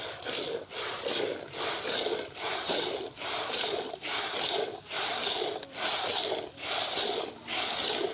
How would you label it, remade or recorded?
recorded